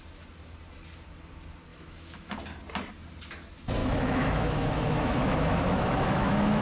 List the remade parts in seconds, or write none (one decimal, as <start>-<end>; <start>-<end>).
1.7-2.4; 3.8-6.6